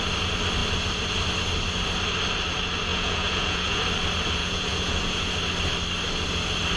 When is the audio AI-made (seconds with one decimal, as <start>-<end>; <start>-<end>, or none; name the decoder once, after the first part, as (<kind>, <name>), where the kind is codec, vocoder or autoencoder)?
2.9-3.8 (vocoder, Vocos); 4.4-5.3